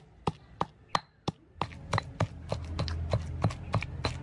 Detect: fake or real real